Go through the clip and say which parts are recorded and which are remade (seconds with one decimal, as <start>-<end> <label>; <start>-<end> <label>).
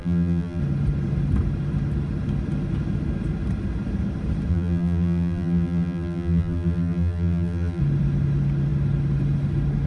0.0-0.6 remade; 0.6-4.5 recorded; 4.5-7.8 remade; 7.8-9.9 recorded